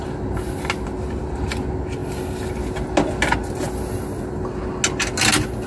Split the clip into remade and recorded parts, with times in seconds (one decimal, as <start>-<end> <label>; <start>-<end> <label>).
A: 0.0-5.7 recorded